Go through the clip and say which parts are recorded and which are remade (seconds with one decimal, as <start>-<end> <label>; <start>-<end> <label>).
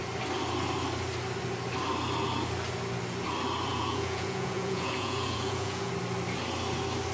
0.0-3.7 recorded; 3.7-5.9 remade; 5.9-7.1 recorded